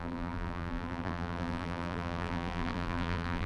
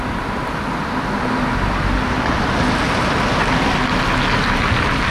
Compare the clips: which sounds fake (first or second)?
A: first